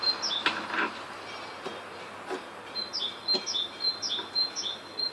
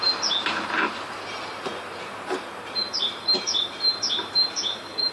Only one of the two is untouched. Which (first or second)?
first